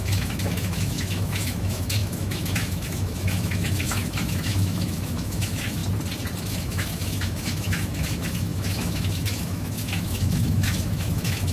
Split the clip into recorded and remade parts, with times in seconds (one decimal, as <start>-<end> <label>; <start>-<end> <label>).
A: 0.0-5.8 remade; 5.8-6.4 recorded; 6.4-11.5 remade